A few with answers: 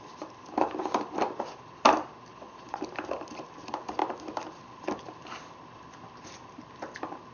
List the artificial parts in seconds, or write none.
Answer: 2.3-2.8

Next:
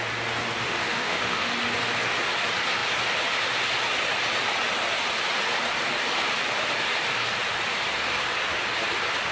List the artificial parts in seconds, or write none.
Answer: 0.6-1.5

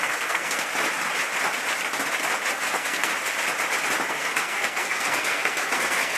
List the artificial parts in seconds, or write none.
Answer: 0.0-0.7; 2.5-3.1; 4.1-6.2

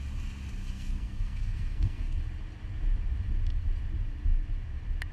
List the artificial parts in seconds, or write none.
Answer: 0.6-2.2

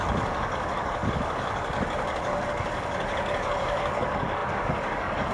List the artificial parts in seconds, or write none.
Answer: 0.0-5.3

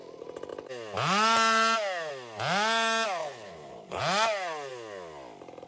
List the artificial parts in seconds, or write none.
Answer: 3.2-4.0